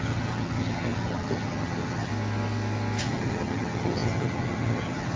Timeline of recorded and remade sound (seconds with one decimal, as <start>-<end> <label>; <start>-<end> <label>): 0.0-2.1 remade; 2.1-3.0 recorded; 3.0-5.2 remade